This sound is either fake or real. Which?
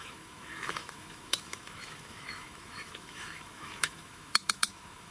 fake